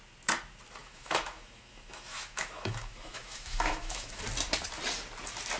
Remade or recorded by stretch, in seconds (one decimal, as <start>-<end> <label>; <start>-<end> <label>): 0.0-0.8 recorded; 0.8-4.2 remade; 4.2-5.6 recorded